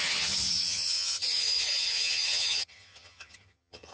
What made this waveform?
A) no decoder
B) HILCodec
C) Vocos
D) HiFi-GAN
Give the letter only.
D